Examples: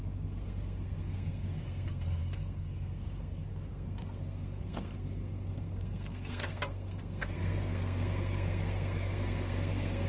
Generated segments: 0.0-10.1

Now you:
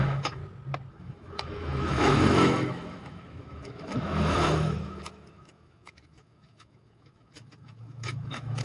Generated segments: 0.0-0.4; 0.9-8.6

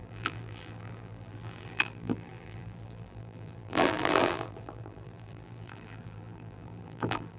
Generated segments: 0.0-7.4